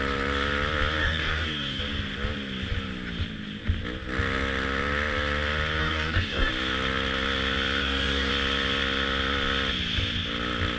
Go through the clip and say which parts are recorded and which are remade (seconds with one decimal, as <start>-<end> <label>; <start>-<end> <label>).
0.0-1.0 recorded; 1.0-1.8 remade; 1.8-5.8 recorded; 5.8-6.5 remade; 6.5-7.8 recorded; 7.8-8.3 remade; 8.3-10.8 recorded